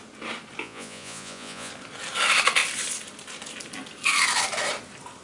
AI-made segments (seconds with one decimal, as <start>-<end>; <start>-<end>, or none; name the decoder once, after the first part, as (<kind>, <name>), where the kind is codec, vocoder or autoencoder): 0.6-1.7 (vocoder, Vocos)